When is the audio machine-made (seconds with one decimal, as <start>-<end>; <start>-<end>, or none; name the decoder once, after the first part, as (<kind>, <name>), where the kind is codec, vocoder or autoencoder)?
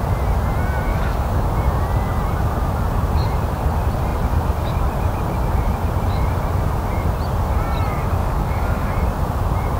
0.9-1.5 (codec, DAC); 8.2-8.9